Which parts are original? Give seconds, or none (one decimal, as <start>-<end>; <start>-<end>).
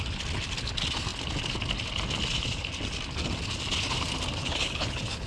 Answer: 0.0-4.4